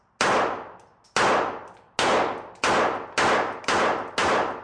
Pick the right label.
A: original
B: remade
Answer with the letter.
A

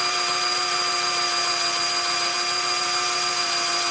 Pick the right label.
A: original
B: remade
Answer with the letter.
B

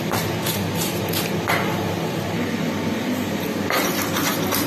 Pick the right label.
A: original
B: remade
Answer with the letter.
A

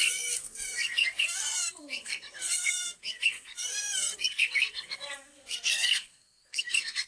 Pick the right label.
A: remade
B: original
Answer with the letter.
A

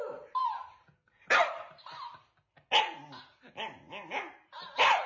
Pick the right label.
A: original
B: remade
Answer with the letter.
A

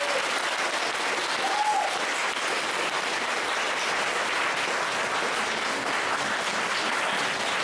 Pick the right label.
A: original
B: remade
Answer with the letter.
A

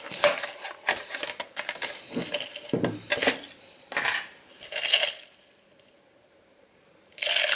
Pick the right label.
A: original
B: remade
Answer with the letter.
A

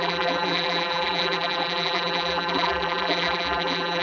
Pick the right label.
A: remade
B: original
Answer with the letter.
A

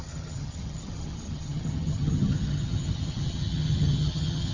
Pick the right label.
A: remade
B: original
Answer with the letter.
A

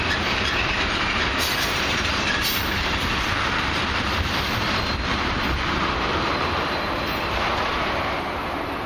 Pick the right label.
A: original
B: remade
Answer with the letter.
B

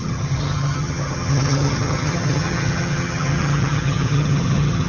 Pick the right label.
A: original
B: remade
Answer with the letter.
B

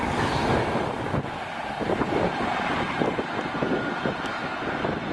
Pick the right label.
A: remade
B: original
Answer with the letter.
B